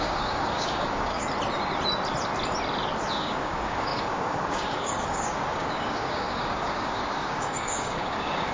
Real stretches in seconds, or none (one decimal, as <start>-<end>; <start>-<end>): 1.2-3.1